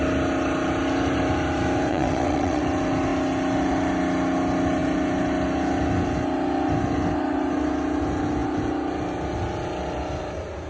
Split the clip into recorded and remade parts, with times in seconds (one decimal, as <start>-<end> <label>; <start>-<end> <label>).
0.0-1.9 recorded; 1.9-2.6 remade; 2.6-10.7 recorded